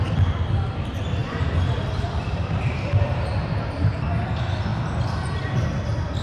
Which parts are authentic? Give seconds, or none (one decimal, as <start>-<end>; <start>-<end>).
0.0-1.2; 3.9-6.2